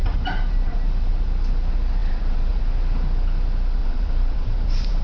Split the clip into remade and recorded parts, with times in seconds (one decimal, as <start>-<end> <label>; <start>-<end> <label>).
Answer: 0.0-1.1 remade; 1.1-2.0 recorded; 2.0-2.6 remade; 2.6-3.8 recorded; 3.8-5.0 remade